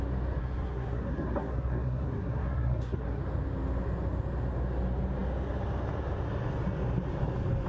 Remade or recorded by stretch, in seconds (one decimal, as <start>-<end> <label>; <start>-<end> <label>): 0.0-0.4 recorded; 0.4-3.2 remade; 3.2-7.7 recorded